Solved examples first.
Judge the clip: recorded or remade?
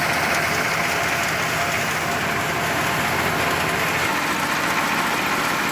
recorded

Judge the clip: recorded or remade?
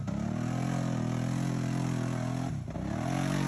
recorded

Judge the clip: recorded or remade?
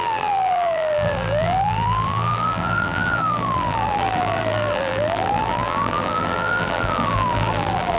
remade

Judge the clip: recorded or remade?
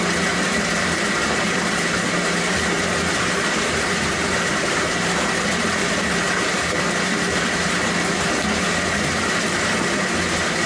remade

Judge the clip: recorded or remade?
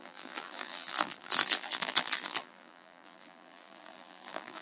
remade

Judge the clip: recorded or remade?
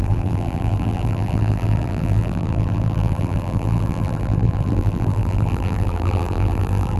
remade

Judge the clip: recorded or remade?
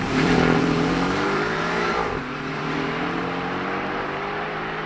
remade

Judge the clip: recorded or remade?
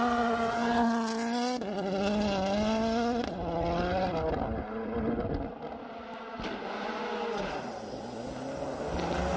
recorded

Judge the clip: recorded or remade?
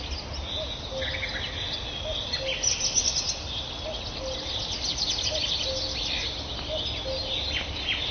recorded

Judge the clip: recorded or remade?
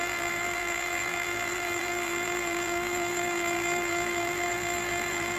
remade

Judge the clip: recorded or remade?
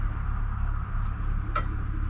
recorded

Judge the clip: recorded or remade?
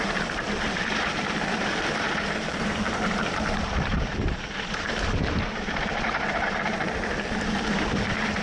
remade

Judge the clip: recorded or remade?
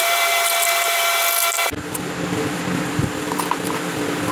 remade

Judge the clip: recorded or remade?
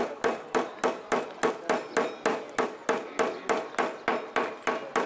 recorded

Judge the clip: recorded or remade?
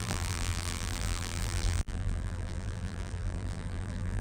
remade